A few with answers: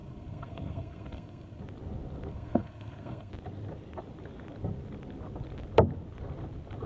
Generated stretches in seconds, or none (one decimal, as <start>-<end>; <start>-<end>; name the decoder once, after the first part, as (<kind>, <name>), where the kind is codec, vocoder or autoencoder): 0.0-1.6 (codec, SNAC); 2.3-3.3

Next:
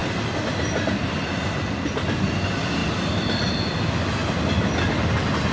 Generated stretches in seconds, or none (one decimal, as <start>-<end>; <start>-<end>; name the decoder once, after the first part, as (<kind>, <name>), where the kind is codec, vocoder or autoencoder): none

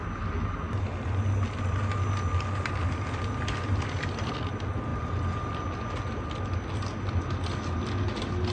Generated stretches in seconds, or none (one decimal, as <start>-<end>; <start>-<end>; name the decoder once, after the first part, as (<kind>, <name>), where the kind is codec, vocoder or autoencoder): none

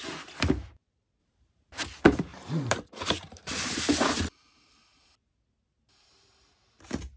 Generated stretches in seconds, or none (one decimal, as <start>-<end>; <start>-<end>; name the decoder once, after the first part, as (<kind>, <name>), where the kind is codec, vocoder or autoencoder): 1.2-1.8 (vocoder, BigVGAN v2); 2.3-4.2

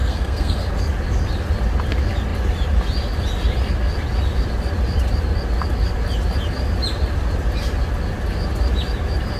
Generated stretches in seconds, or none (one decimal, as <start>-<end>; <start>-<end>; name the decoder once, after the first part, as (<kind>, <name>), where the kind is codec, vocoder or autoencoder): 0.0-0.7 (codec, SNAC)

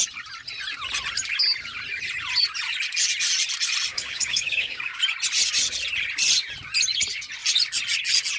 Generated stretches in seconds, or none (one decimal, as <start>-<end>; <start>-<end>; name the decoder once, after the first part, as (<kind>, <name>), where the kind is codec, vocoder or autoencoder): 3.9-5.0 (codec, DAC)

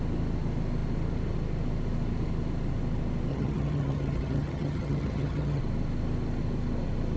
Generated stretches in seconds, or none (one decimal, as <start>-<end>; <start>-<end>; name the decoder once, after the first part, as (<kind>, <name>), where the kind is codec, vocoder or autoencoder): 3.3-5.6 (vocoder, HiFi-GAN)

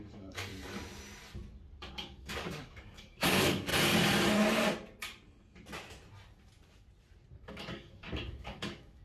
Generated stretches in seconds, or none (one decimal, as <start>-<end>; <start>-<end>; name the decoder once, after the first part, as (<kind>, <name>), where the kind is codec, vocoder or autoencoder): 0.0-0.5 (codec, DAC); 1.9-3.7; 7.5-9.0